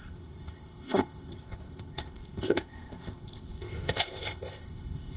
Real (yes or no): no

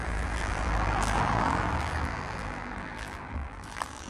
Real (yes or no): no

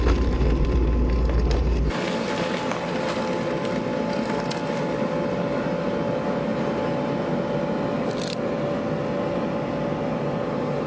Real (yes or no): yes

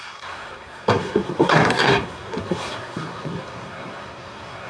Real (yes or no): no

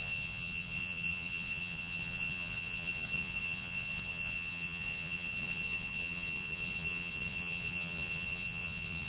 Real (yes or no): no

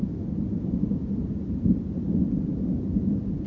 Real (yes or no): yes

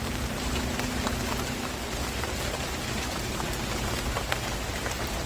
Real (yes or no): yes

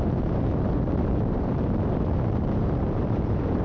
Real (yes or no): no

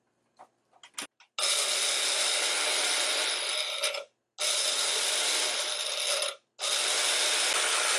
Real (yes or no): yes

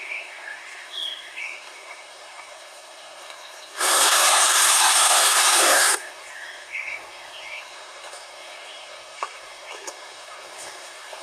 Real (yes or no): no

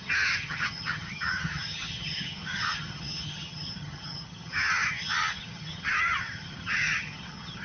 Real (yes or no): no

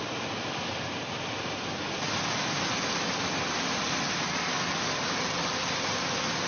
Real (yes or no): yes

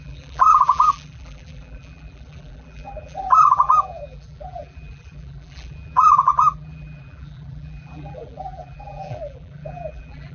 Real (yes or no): no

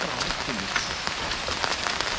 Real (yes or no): yes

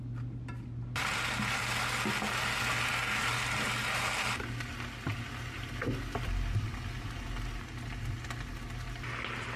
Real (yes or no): yes